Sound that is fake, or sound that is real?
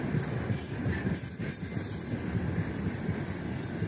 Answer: real